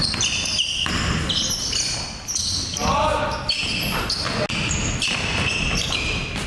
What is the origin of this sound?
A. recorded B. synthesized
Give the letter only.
A